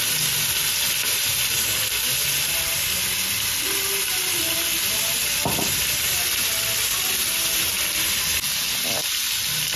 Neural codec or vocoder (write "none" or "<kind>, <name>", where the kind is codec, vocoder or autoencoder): none